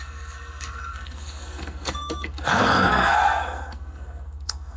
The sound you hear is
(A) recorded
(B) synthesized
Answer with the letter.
B